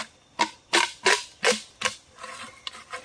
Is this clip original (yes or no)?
yes